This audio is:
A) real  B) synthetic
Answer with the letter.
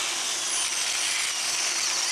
A